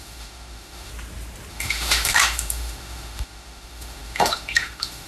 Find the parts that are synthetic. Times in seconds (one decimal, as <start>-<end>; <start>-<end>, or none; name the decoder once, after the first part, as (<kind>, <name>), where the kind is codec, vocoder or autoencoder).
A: 0.0-0.9 (autoencoder, DAC-VAE); 1.5-5.1

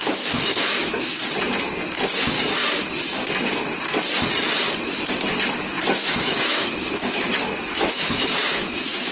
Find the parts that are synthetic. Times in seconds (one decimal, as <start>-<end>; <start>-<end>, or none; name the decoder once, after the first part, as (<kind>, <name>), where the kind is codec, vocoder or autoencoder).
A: 0.0-1.2 (autoencoder, DAC-VAE); 5.8-9.1

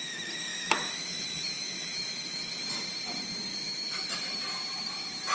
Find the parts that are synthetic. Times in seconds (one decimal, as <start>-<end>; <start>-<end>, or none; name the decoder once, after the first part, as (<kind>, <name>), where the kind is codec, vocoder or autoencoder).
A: 0.5-2.6 (autoencoder, DAC-VAE); 3.5-4.1

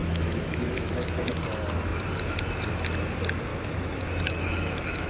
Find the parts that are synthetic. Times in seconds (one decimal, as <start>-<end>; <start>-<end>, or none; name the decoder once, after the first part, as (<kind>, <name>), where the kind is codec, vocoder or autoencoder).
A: 0.0-1.3 (autoencoder, DAC-VAE); 3.5-5.1